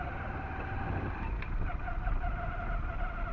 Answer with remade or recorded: recorded